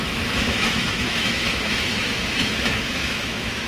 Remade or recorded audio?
remade